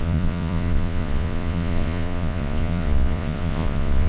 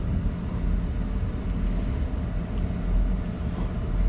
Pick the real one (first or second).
second